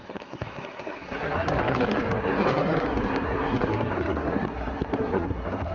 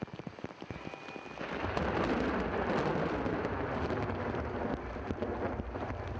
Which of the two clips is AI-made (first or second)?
first